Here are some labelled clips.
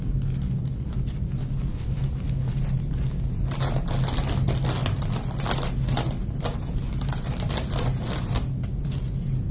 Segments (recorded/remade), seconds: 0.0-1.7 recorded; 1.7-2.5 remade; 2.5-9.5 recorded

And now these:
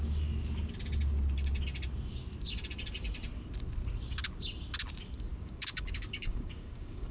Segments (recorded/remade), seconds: 0.0-5.3 recorded; 5.3-7.1 remade

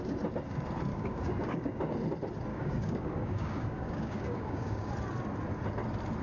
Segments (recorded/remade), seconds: 0.0-0.9 recorded; 0.9-1.8 remade; 1.8-2.5 recorded; 2.5-4.9 remade; 4.9-6.2 recorded